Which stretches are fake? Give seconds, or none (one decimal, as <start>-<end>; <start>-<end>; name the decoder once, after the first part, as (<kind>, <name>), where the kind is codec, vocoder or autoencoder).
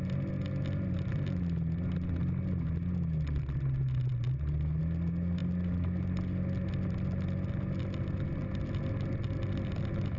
none